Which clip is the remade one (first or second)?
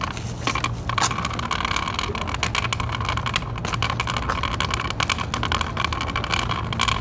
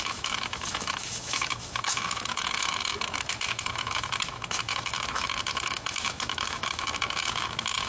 second